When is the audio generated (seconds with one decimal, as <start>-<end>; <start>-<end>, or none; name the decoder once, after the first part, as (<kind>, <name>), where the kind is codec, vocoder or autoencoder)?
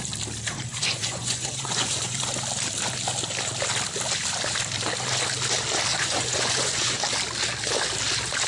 0.7-2.2 (vocoder, Vocos); 5.9-7.0